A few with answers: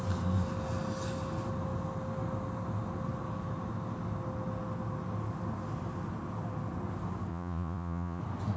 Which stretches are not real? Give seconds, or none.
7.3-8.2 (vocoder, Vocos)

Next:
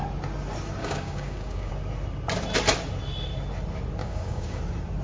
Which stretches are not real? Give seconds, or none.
0.8-1.7 (codec, DAC); 4.0-4.6

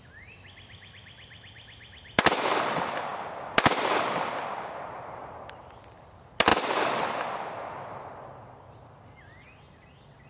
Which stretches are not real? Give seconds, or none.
none

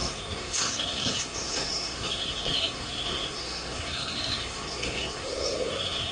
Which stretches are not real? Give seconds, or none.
0.0-6.1 (codec, SNAC)

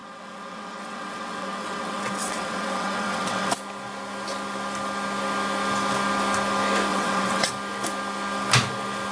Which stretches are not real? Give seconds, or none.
0.0-3.5 (vocoder, WaveNeXt); 6.9-7.5